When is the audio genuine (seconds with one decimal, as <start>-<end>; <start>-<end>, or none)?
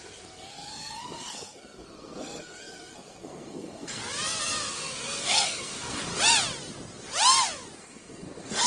4.0-4.7; 6.1-7.8